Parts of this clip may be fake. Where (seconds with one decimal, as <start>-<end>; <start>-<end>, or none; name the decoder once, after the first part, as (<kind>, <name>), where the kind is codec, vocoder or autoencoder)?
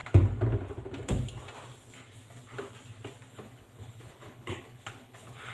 3.3-5.5 (codec, HILCodec)